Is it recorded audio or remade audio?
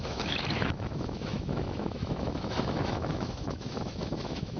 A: remade